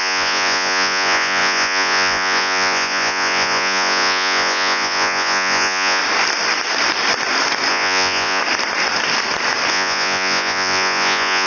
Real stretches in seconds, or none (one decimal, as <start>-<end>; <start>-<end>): 6.0-7.7; 8.4-9.7